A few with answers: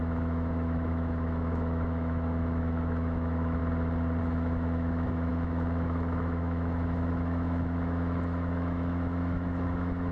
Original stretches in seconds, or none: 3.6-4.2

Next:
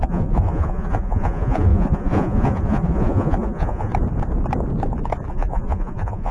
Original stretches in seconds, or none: 3.9-5.3

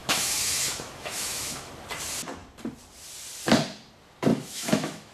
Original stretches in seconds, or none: 1.7-4.3

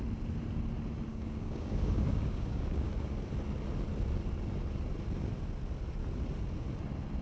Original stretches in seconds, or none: 0.0-1.1; 2.9-7.2

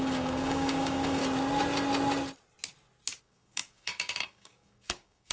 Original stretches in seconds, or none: 1.2-3.2